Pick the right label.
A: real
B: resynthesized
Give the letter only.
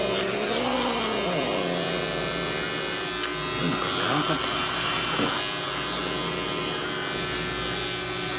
A